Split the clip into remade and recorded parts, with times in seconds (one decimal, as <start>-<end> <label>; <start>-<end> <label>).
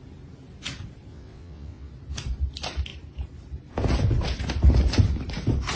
0.0-1.1 recorded; 1.1-1.9 remade; 1.9-5.8 recorded